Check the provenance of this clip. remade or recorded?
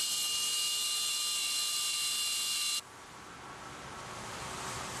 recorded